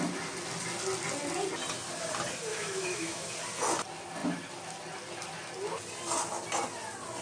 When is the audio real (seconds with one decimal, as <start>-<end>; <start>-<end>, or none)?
0.0-2.5; 3.3-7.2